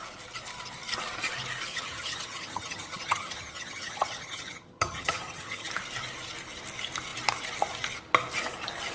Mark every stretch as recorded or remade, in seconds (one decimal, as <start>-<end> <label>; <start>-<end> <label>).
0.0-1.7 recorded; 1.7-5.7 remade; 5.7-8.9 recorded